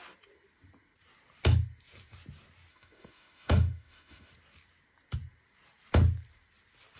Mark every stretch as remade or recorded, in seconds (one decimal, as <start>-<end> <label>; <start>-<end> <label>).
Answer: 0.0-2.7 recorded; 2.7-4.3 remade; 4.3-7.0 recorded